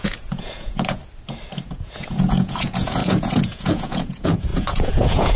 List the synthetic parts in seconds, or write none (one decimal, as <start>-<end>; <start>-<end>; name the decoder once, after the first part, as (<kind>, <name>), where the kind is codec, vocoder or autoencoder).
0.0-1.0 (vocoder, Vocos); 1.7-5.4